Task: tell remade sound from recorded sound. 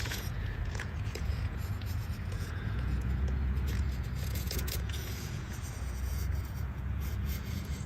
remade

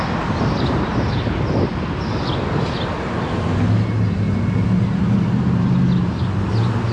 recorded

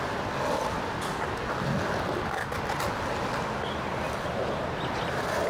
recorded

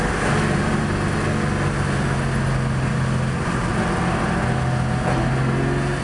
recorded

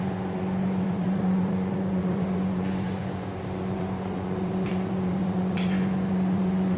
remade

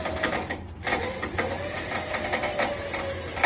recorded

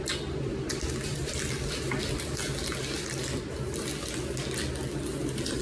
recorded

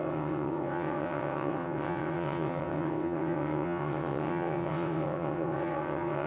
remade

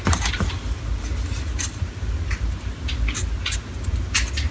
recorded